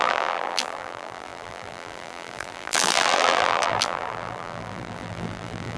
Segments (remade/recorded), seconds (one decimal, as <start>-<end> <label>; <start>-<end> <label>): 0.0-5.8 remade